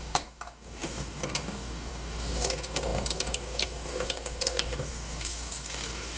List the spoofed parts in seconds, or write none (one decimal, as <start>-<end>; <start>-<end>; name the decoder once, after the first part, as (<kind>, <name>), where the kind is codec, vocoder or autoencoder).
0.0-6.2 (codec, DAC)